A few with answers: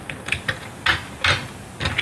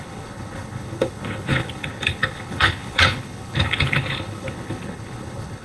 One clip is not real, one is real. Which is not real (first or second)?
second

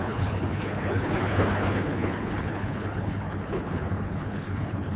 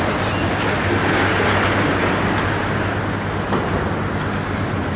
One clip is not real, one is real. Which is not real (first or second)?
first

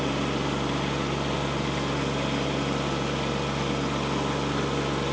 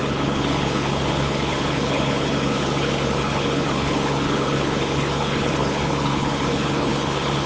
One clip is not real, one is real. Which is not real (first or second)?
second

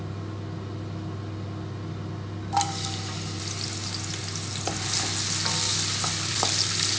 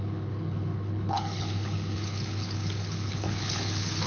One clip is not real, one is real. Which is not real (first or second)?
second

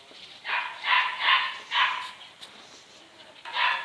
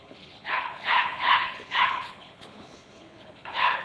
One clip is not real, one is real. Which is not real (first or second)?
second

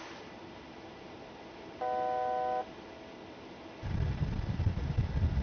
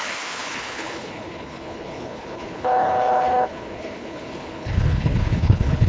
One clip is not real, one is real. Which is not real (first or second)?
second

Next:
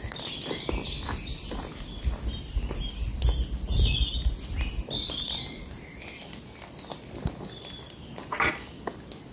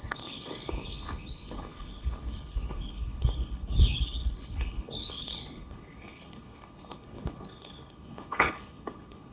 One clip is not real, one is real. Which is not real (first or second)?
second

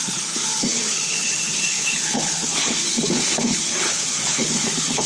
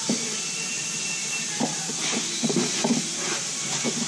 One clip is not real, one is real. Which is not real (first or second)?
first